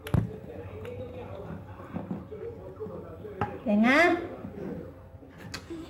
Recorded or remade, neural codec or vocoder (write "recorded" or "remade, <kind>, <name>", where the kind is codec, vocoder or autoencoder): recorded